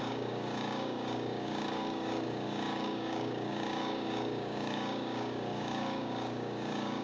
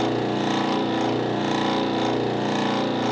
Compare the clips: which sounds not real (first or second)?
first